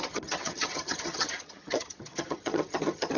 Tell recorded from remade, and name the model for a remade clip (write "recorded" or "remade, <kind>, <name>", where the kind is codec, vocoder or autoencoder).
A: remade, vocoder, HiFi-GAN